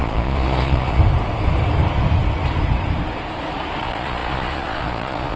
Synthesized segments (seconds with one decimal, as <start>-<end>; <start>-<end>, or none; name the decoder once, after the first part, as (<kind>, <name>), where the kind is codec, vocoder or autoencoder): 0.0-1.0 (vocoder, Vocos); 3.8-5.4